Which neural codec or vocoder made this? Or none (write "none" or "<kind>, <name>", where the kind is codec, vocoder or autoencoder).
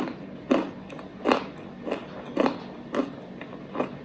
none